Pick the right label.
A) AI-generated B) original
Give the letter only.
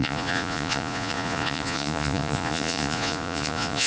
A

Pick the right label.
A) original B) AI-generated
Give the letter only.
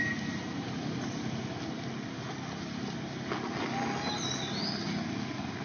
A